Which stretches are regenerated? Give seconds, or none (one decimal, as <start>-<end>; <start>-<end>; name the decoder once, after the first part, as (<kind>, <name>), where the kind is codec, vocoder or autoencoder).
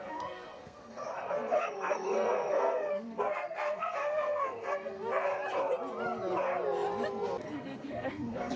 0.0-5.3 (codec, SNAC); 7.4-8.6